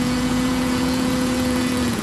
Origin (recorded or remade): remade